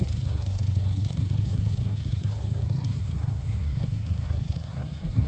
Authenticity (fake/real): fake